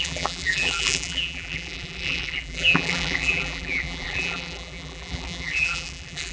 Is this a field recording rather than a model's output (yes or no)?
no